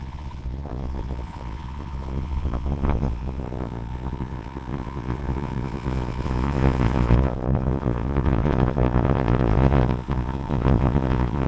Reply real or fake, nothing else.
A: fake